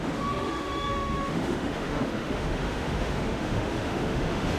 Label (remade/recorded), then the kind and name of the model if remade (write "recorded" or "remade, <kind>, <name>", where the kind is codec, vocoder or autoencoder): remade, autoencoder, DAC-VAE